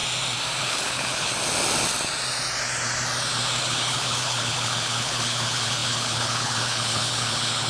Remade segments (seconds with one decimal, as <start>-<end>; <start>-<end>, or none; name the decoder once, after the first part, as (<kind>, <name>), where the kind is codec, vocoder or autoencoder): 0.6-1.3 (codec, HILCodec); 3.6-7.7